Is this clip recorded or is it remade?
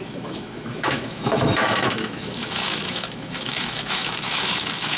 remade